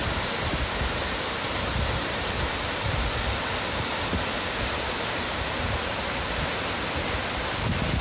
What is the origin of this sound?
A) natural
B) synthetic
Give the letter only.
A